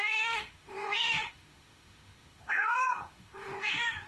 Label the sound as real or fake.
fake